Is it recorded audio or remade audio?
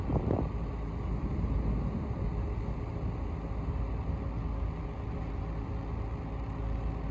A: recorded